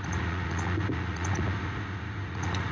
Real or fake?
fake